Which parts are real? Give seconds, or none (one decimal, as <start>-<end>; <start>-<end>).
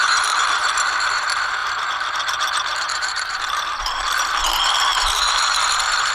0.0-1.6; 4.4-4.9